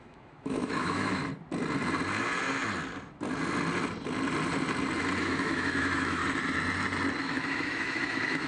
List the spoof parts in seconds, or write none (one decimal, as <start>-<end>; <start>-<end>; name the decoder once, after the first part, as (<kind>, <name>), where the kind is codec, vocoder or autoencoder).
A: 0.0-1.2 (autoencoder, DAC-VAE); 5.2-6.2; 7.2-8.5